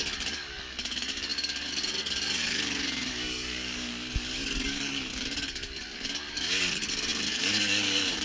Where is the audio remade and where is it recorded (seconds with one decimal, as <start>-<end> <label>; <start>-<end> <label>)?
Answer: 0.0-8.2 remade